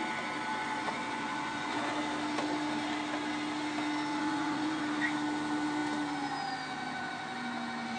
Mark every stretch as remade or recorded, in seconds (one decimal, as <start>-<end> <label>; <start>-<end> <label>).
0.0-0.5 recorded; 0.5-1.9 remade; 1.9-4.1 recorded; 4.1-4.8 remade; 4.8-8.0 recorded

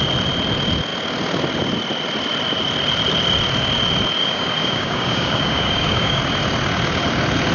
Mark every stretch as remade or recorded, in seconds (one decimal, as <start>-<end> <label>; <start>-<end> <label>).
0.0-4.2 recorded; 4.2-6.2 remade; 6.2-7.5 recorded